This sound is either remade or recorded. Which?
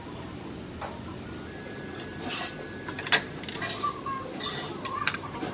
recorded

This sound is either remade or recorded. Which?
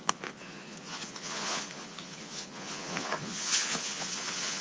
remade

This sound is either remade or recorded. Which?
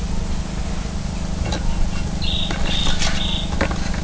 recorded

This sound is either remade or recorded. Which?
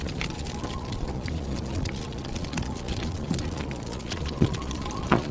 remade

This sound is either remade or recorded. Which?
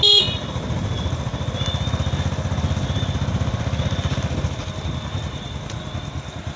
recorded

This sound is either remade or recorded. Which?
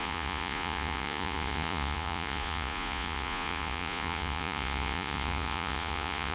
remade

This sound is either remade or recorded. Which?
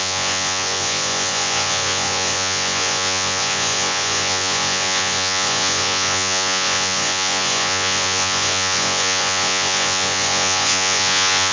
remade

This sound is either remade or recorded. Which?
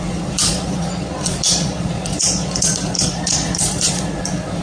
remade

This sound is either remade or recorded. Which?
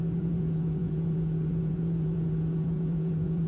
remade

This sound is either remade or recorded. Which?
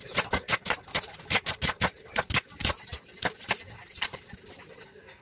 recorded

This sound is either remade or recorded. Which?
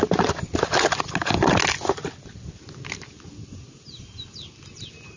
recorded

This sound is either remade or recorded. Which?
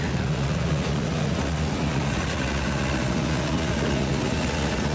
remade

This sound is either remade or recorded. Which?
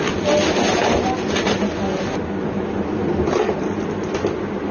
recorded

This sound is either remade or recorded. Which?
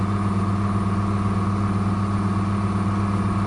recorded